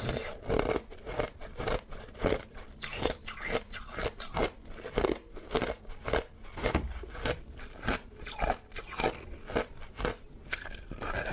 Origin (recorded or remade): recorded